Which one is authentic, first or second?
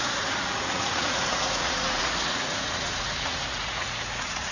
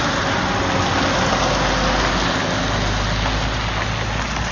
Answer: second